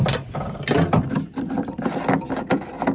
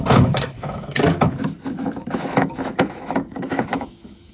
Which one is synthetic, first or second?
second